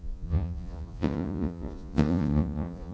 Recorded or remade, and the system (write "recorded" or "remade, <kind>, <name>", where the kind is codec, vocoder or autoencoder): remade, vocoder, Vocos